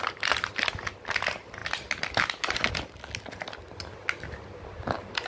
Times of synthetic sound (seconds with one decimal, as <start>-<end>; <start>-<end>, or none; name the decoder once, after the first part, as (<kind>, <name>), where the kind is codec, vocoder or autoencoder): none